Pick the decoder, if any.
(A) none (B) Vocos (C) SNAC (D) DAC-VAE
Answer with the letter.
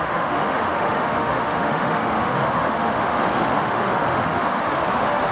D